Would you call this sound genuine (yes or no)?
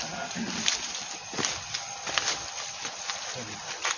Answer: yes